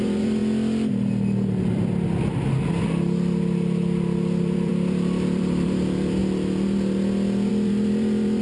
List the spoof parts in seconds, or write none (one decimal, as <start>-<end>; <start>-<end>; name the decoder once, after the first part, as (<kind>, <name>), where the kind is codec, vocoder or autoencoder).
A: 0.0-0.4 (vocoder, BigVGAN v2); 4.4-6.2; 7.5-8.4